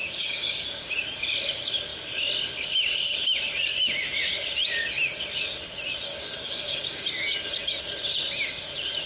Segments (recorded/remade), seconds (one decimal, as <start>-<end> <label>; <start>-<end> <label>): 0.0-0.9 remade; 0.9-6.1 recorded; 6.1-7.0 remade; 7.0-9.1 recorded